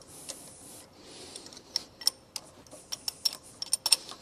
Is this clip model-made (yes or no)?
no